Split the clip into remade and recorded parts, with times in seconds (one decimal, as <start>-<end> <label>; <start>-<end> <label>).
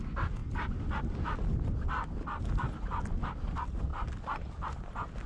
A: 0.0-5.3 recorded